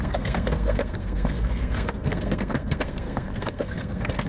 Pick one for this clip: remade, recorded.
remade